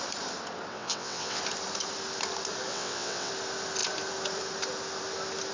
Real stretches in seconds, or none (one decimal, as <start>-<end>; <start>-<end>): 0.0-0.7; 1.4-2.7; 3.3-5.5